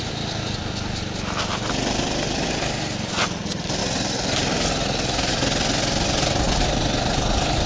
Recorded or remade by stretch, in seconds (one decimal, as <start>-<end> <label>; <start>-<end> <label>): 0.0-7.7 recorded